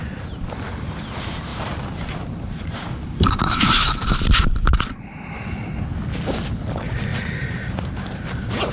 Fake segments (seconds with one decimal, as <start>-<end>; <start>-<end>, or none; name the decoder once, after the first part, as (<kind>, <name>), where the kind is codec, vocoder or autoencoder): 1.5-4.8 (vocoder, BigVGAN v2); 7.1-8.7